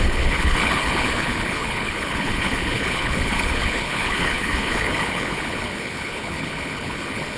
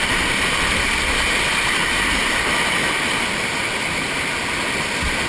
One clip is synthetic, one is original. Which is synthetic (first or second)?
first